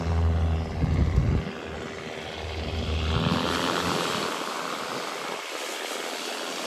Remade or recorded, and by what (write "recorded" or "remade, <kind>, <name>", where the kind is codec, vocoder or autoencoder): recorded